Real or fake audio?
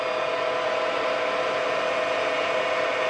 real